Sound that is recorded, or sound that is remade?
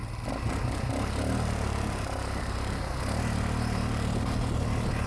recorded